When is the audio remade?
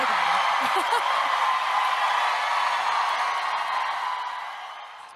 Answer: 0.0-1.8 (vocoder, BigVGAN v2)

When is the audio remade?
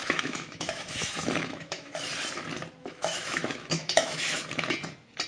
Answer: 0.0-1.9 (autoencoder, DAC-VAE); 2.8-4.4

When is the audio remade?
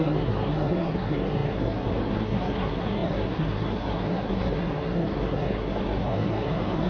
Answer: 0.0-6.9 (codec, SNAC)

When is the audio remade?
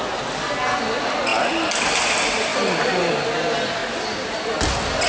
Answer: none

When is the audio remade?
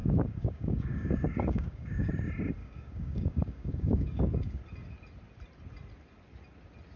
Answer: 0.0-2.1 (codec, DAC); 2.6-4.6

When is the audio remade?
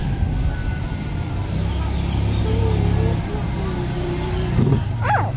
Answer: none